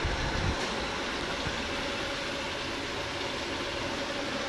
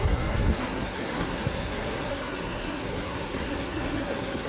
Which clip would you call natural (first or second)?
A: first